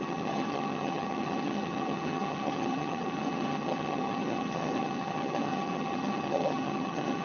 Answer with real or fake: fake